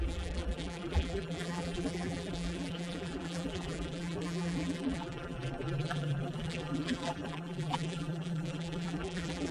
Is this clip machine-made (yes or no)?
yes